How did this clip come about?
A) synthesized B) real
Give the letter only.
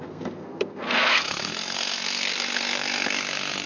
A